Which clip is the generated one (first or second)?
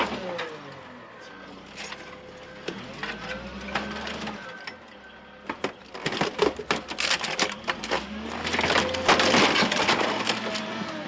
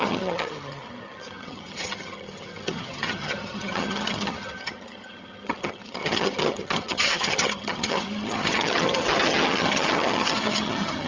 second